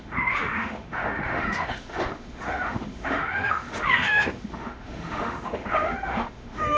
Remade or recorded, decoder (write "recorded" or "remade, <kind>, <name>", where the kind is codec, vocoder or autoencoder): remade, autoencoder, DAC-VAE